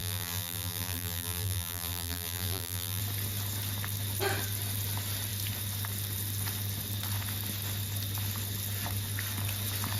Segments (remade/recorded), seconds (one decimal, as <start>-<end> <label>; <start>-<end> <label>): 0.0-3.0 remade; 3.0-10.0 recorded